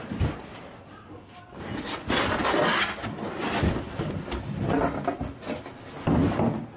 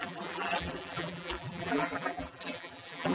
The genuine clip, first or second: first